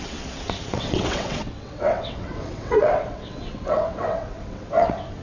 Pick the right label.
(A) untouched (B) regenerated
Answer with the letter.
B